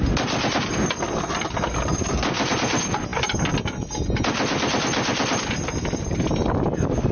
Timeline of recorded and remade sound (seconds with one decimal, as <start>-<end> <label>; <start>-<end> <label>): 0.0-7.1 recorded